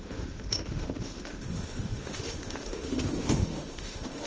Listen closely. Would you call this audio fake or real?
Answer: fake